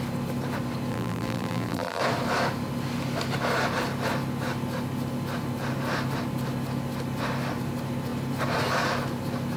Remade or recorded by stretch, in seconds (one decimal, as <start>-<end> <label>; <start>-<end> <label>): 0.0-0.9 recorded; 0.9-2.0 remade; 2.0-9.6 recorded